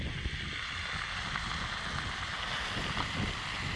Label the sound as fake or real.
real